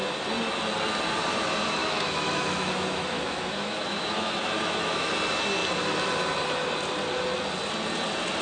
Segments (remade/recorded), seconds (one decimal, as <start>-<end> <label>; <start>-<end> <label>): 0.0-1.8 recorded; 1.8-5.1 remade; 5.1-8.4 recorded